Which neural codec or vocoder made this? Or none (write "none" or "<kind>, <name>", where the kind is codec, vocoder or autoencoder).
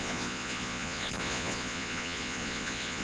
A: vocoder, Vocos